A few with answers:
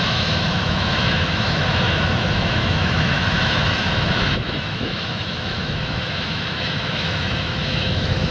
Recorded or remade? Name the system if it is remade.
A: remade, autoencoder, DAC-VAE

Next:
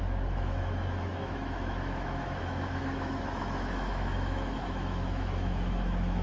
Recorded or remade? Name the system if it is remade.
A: remade, autoencoder, DAC-VAE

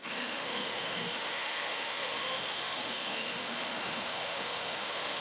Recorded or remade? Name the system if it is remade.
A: remade, autoencoder, DAC-VAE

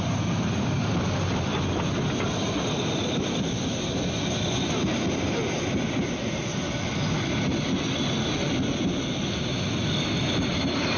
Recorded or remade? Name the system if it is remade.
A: recorded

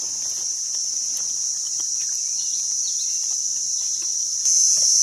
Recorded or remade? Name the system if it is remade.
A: recorded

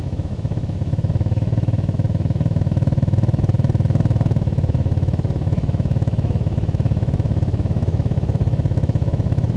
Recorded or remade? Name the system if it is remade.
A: remade, autoencoder, DAC-VAE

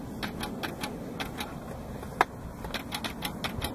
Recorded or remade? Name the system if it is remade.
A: recorded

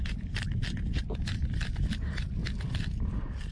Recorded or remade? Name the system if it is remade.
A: recorded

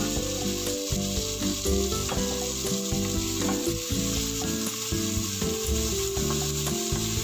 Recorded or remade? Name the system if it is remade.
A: recorded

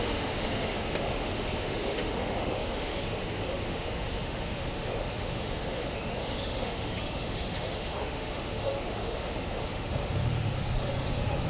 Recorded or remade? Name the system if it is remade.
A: remade, autoencoder, DAC-VAE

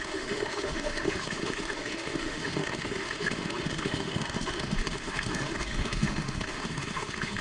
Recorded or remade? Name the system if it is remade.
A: remade, autoencoder, DAC-VAE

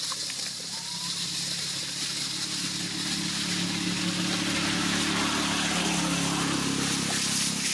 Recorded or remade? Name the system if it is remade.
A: recorded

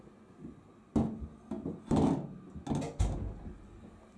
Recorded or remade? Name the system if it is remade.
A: recorded